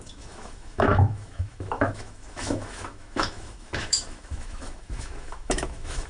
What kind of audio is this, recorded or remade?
remade